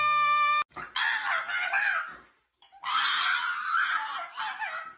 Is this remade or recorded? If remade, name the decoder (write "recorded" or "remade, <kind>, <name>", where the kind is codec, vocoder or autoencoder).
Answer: recorded